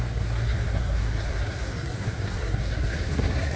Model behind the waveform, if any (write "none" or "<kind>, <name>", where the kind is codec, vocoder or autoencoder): codec, SNAC